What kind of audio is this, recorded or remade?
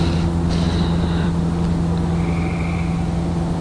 recorded